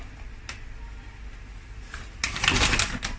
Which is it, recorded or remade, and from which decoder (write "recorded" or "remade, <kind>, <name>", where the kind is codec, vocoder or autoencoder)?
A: recorded